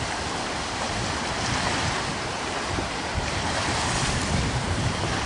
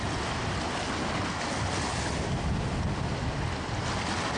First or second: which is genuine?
second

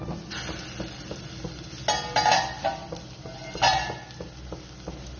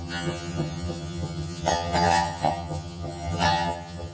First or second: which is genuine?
first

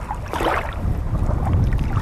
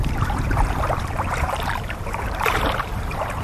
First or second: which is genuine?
first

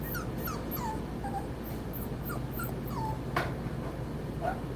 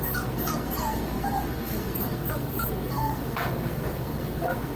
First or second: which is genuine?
first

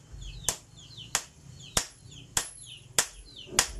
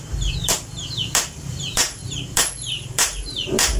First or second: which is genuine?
first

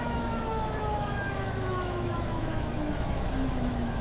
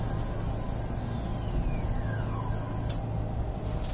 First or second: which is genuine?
second